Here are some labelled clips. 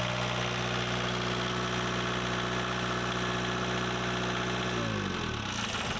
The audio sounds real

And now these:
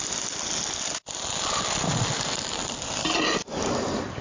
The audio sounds real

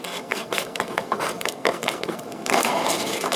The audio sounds fake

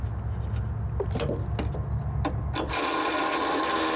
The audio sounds real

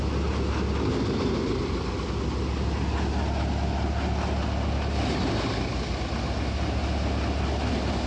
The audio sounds real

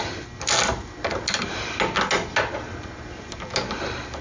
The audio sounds real